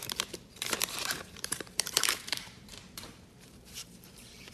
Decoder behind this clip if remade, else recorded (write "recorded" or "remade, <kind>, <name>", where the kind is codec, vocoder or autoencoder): remade, vocoder, BigVGAN v2